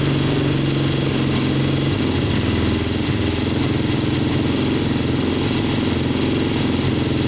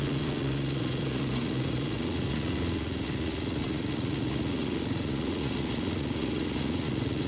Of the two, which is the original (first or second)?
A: first